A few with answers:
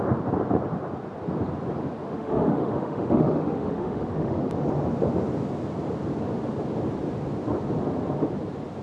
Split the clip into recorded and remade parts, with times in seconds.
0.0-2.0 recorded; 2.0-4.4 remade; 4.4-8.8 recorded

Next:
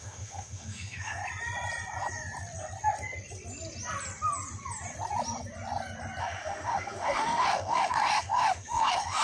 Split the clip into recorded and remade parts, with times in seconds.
0.0-1.2 remade; 1.2-6.2 recorded; 6.2-9.2 remade

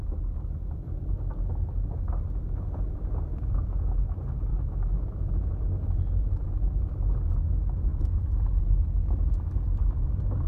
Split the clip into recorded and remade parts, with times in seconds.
0.0-4.5 recorded; 4.5-5.5 remade; 5.5-10.5 recorded

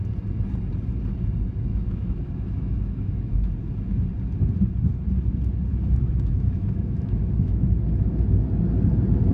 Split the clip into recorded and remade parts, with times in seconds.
0.0-1.7 recorded; 1.7-3.5 remade; 3.5-5.7 recorded; 5.7-7.7 remade; 7.7-9.3 recorded